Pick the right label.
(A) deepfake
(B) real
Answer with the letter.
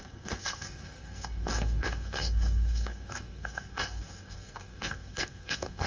A